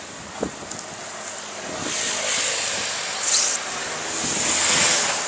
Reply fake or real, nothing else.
real